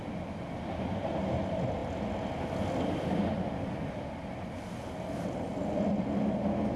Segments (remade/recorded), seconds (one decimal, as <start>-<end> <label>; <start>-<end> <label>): 0.0-6.8 recorded